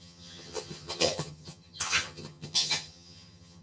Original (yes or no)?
no